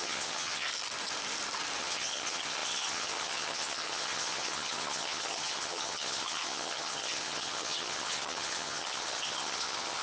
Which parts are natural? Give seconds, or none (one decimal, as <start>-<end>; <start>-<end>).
0.7-1.8